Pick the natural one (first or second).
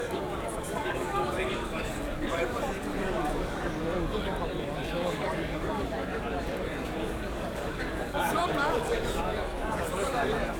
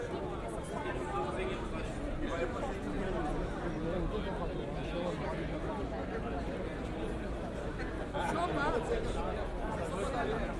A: second